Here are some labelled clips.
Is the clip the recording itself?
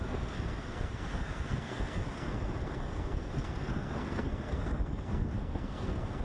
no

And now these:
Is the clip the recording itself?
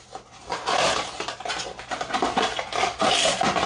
yes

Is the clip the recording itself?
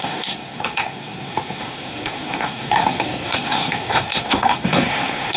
no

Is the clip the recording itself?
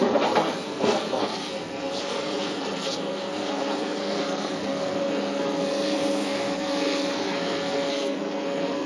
no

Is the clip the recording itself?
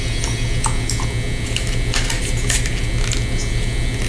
yes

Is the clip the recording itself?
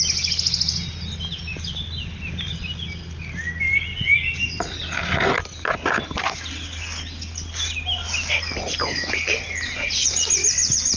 yes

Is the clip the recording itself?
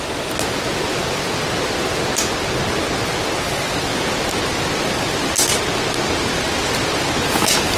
yes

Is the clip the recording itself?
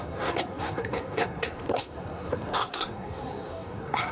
no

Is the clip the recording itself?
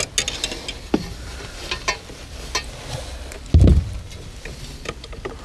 yes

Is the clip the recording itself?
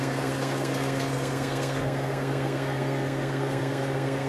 no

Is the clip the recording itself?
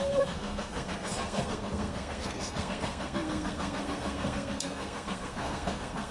no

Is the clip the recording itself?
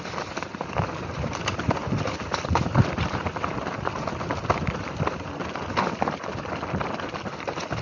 yes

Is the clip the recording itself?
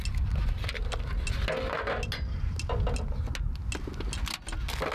yes